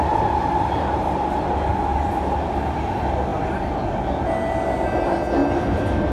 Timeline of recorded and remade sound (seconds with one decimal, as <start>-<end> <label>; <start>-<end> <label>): 0.0-1.9 recorded; 1.9-2.8 remade; 2.8-6.1 recorded